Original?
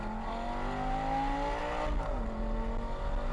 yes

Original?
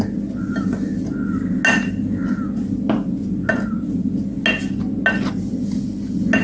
yes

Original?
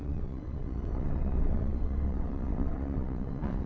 no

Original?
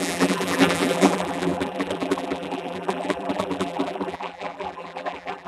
no